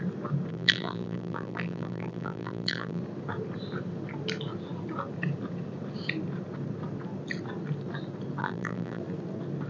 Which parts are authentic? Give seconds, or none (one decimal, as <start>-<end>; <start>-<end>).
0.0-0.5; 3.0-8.4; 9.0-9.7